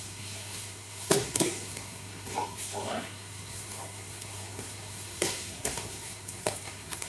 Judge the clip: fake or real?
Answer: fake